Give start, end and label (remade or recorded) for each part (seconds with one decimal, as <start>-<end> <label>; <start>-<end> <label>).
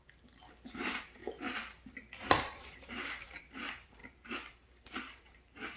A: 0.0-1.2 remade; 1.2-2.2 recorded; 2.2-5.8 remade